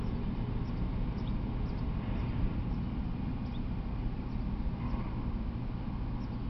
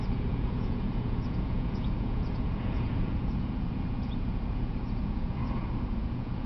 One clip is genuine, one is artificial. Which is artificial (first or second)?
second